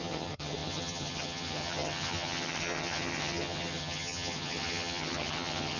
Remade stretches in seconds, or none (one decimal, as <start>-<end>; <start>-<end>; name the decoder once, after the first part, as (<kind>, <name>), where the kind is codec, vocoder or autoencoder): 0.0-5.8 (vocoder, HiFi-GAN)